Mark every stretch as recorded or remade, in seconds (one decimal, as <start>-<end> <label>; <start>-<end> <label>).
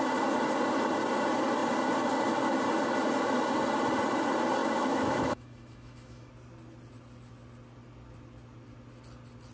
0.0-4.6 recorded; 4.6-6.3 remade; 6.3-9.5 recorded